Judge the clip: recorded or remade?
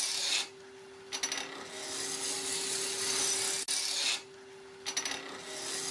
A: recorded